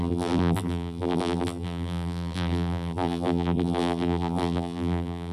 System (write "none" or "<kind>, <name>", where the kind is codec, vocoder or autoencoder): vocoder, BigVGAN v2